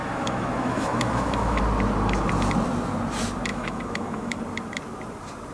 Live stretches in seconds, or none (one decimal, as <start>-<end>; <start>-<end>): 1.6-3.5; 4.4-5.5